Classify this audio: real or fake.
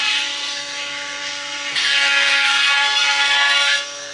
fake